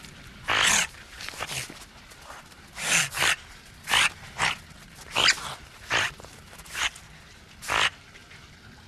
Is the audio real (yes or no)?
yes